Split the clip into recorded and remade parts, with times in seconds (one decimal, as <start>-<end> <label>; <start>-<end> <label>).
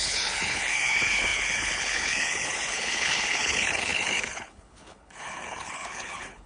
0.0-6.5 remade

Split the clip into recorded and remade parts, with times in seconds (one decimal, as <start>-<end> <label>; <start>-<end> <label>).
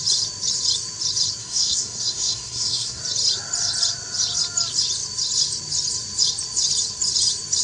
0.0-1.4 recorded; 1.4-3.0 remade; 3.0-7.6 recorded